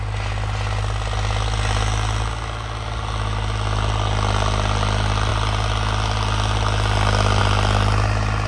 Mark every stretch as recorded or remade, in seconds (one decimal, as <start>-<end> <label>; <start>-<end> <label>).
0.0-8.5 recorded